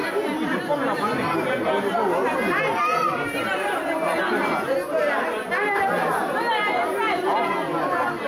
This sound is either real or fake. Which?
real